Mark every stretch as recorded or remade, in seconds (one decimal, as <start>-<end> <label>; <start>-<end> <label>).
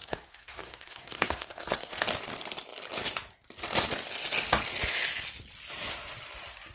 0.0-1.9 remade; 1.9-6.7 recorded